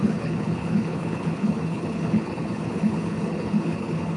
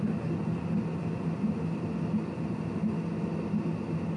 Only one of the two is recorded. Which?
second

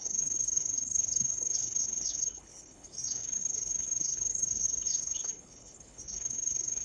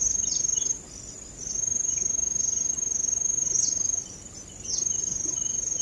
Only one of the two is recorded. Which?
second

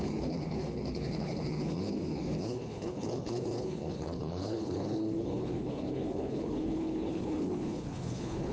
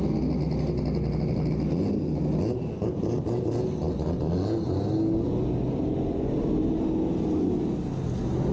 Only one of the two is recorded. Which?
second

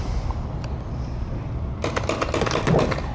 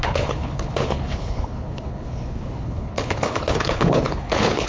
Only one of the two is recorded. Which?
first